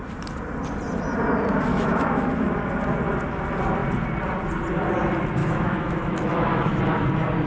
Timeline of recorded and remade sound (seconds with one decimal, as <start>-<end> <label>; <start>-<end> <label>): 0.0-1.7 recorded; 1.7-2.7 remade; 2.7-5.4 recorded; 5.4-6.8 remade; 6.8-7.5 recorded